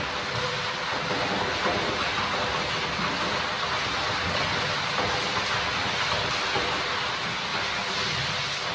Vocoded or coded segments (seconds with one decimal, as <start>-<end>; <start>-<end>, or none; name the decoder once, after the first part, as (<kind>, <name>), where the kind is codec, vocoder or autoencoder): none